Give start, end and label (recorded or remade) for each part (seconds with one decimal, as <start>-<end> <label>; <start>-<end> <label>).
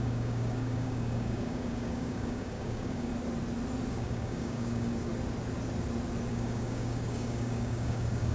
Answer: 0.0-3.1 remade; 3.1-3.9 recorded; 3.9-5.1 remade; 5.1-6.3 recorded; 6.3-8.3 remade